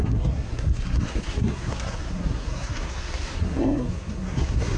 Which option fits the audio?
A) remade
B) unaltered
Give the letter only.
A